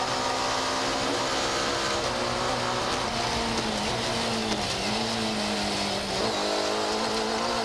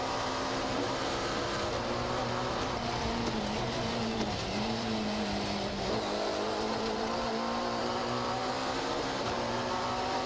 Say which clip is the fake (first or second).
second